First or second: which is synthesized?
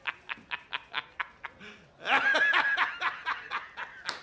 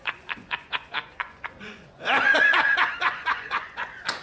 second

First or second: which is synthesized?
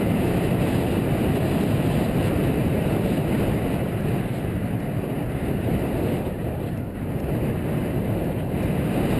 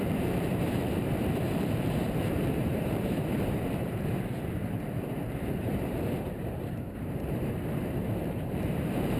second